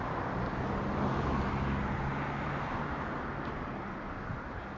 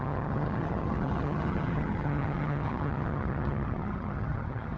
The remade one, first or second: second